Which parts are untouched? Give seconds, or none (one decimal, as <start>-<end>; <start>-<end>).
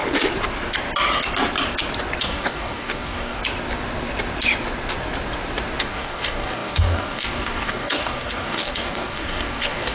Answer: 0.0-2.2; 3.4-5.8